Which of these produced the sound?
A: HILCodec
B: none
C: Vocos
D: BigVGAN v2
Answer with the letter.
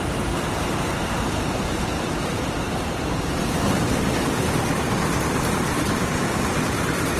D